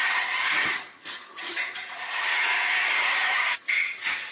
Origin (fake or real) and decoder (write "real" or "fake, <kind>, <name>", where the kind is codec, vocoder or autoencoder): fake, vocoder, HiFi-GAN